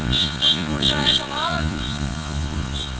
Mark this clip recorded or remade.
remade